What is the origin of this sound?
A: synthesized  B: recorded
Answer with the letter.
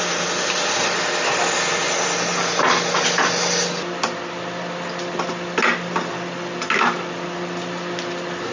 B